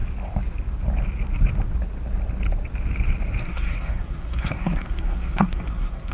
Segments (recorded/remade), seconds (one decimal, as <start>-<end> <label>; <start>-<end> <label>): 0.0-3.4 recorded; 3.4-6.1 remade